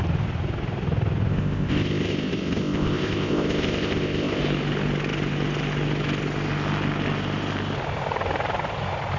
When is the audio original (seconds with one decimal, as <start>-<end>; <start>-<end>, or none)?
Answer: 0.0-1.3; 4.4-9.2